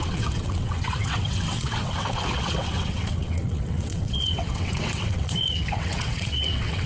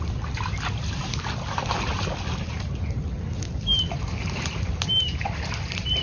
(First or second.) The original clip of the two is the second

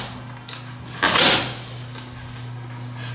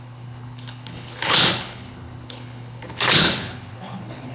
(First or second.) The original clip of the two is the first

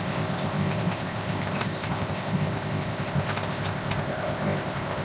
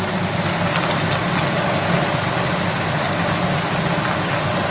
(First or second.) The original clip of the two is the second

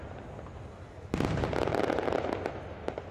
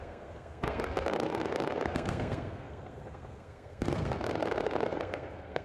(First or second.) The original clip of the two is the first